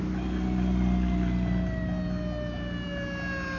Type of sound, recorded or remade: recorded